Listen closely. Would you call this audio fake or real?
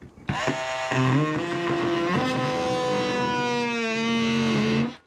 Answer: real